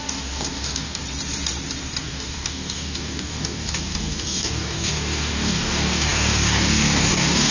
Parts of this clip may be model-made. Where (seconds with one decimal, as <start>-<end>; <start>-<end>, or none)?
0.0-1.0; 2.0-7.5